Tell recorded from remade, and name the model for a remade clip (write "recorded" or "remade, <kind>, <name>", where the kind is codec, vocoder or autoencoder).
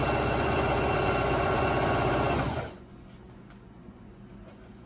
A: remade, vocoder, Vocos